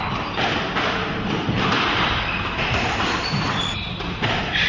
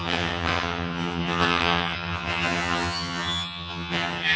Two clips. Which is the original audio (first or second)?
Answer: first